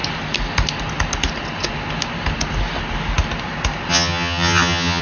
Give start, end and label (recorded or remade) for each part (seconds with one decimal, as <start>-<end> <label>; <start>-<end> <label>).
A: 0.0-3.9 recorded; 3.9-5.0 remade